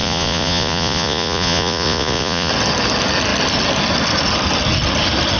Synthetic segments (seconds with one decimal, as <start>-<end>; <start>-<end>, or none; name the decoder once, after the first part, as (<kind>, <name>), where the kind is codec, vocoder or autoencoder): 0.0-2.5 (vocoder, Vocos)